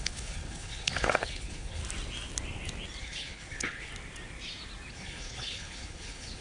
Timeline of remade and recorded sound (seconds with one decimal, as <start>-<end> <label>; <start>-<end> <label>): 0.0-1.8 remade; 1.8-3.0 recorded; 3.0-3.9 remade; 3.9-4.9 recorded; 4.9-6.4 remade